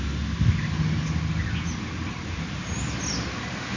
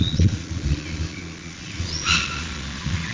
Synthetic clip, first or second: second